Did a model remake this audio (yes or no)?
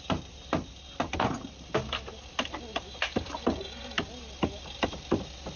no